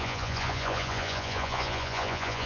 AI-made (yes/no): yes